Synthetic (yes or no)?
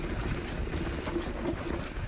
no